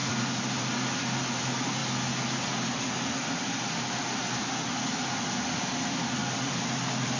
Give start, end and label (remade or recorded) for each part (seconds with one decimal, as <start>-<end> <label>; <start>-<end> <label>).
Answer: 0.0-1.0 remade; 1.0-6.2 recorded; 6.2-7.2 remade